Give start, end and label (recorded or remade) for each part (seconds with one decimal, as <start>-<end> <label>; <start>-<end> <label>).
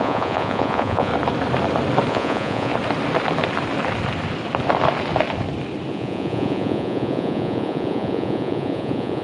0.0-1.1 remade; 1.1-2.1 recorded; 2.1-2.7 remade; 2.7-5.9 recorded; 5.9-9.2 remade